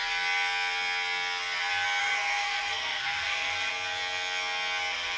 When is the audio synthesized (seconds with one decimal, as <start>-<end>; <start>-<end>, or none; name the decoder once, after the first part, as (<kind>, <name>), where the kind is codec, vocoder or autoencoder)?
2.0-3.7 (codec, SNAC)